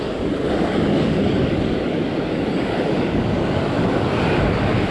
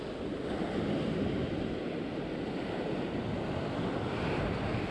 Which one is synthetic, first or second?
first